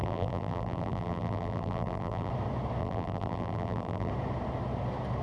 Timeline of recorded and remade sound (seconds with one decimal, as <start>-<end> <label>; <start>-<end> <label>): 0.0-2.3 remade; 2.3-2.8 recorded; 2.8-4.1 remade; 4.1-5.2 recorded